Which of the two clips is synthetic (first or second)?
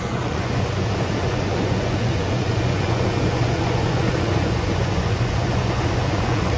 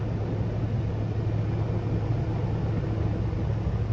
first